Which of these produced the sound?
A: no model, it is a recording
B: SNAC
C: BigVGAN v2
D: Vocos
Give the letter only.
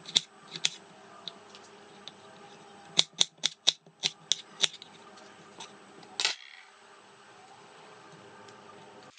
A